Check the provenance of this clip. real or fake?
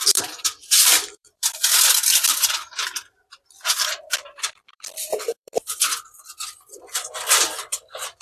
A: fake